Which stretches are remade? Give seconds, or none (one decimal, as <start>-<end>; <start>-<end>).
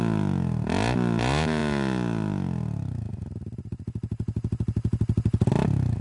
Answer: none